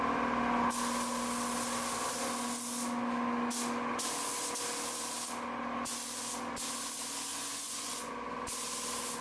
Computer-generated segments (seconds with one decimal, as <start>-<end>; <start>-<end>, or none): 7.3-8.1